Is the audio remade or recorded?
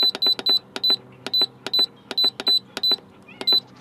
recorded